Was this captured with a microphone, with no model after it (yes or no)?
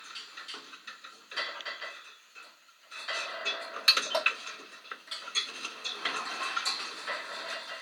yes